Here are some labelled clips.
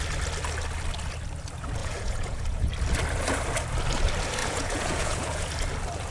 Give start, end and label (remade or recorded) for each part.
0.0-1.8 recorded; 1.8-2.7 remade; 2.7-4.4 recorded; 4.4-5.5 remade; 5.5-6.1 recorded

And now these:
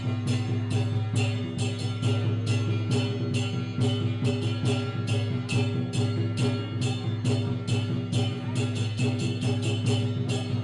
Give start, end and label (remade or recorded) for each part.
0.0-10.6 recorded

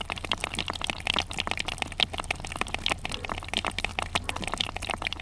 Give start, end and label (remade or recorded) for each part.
0.0-0.4 remade; 0.4-3.5 recorded; 3.5-3.9 remade; 3.9-4.6 recorded; 4.6-5.2 remade

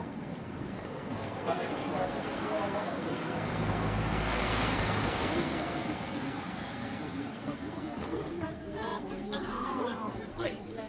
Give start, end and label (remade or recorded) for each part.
0.0-10.9 remade

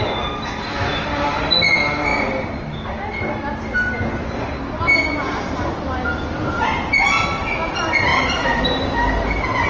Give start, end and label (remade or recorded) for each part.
0.0-8.1 recorded; 8.1-9.7 remade

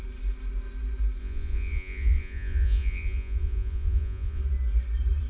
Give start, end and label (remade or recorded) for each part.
0.0-1.2 recorded; 1.2-4.4 remade; 4.4-5.3 recorded